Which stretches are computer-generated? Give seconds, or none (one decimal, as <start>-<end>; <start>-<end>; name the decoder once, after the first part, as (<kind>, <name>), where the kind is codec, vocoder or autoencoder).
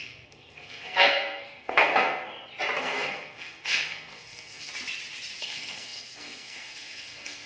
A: 0.0-2.3 (codec, SNAC); 2.8-4.7; 5.4-7.5